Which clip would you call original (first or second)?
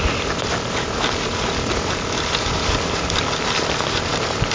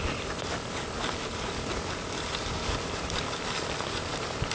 first